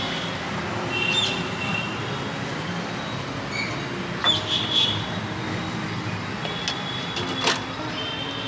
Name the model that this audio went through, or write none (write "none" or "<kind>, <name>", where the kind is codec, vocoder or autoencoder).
none